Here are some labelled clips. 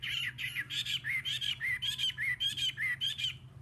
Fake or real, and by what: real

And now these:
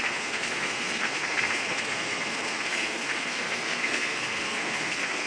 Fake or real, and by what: fake, codec, SNAC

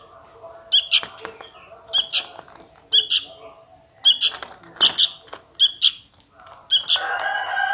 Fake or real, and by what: real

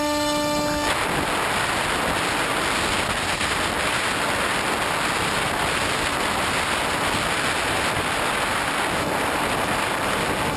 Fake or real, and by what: real